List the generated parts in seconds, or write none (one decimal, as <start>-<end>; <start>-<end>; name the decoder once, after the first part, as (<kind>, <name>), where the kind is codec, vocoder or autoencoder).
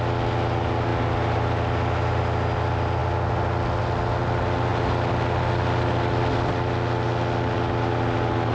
none